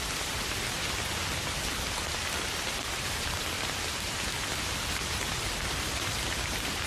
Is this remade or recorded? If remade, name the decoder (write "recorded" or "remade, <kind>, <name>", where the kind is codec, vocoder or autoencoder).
remade, vocoder, BigVGAN v2